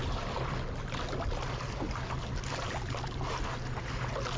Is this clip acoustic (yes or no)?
yes